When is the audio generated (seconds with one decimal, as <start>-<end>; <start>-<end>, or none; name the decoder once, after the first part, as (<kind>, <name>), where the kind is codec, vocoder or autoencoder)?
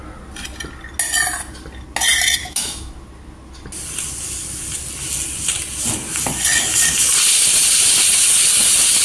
2.4-2.9 (autoencoder, DAC-VAE)